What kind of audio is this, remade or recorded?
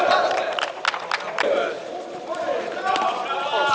recorded